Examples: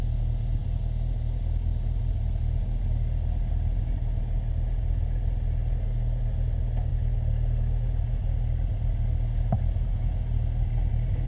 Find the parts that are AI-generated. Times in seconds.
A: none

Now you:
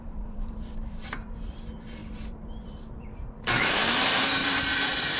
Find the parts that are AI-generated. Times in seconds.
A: 0.0-5.2 (vocoder, BigVGAN v2)

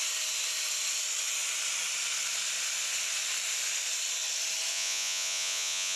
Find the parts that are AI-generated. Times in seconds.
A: 4.7-6.0 (vocoder, Vocos)

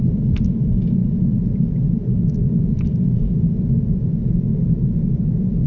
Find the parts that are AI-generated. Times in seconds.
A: none

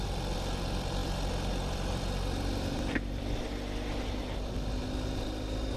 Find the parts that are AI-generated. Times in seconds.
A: 1.0-4.2 (vocoder, BigVGAN v2)

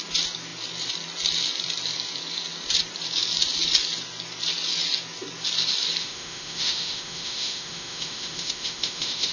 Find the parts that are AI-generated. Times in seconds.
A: 6.0-9.3 (autoencoder, DAC-VAE)

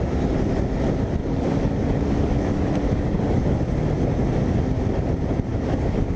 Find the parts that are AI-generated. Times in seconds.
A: 1.2-3.6 (codec, DAC); 5.5-6.2